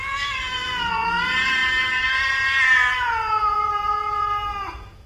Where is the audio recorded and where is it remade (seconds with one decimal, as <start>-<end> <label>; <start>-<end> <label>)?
0.0-5.1 remade